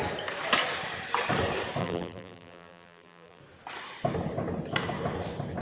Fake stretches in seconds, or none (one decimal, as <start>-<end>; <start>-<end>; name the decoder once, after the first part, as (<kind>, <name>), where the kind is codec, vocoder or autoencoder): 1.8-3.4 (vocoder, BigVGAN v2)